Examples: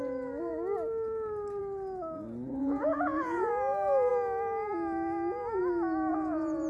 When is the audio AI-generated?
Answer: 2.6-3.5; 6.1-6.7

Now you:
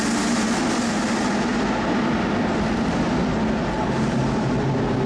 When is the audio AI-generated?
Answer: none

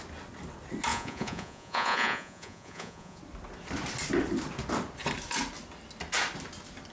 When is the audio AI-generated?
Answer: 0.9-3.2

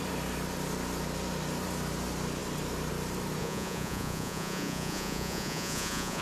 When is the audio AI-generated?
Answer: 3.4-6.2

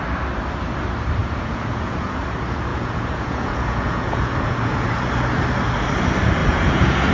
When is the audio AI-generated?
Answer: 1.2-2.2; 2.7-5.1; 6.4-7.1

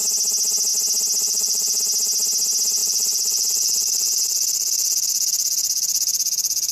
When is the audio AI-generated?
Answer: 1.2-1.8; 2.8-6.7